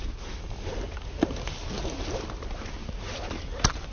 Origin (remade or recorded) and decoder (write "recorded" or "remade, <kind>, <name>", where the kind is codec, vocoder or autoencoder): recorded